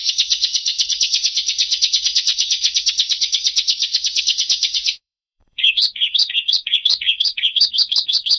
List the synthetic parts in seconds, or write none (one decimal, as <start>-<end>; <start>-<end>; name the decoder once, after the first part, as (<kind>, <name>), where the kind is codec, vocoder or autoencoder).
0.0-8.4 (codec, SNAC)